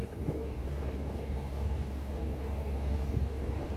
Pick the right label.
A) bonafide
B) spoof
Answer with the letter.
B